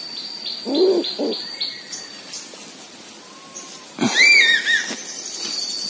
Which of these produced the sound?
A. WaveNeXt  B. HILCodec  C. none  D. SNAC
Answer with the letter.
C